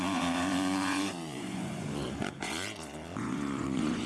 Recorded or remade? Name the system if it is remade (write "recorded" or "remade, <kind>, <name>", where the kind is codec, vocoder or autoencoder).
remade, vocoder, Vocos